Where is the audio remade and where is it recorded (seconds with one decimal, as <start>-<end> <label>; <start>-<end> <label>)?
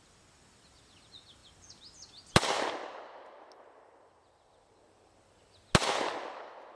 0.0-6.7 recorded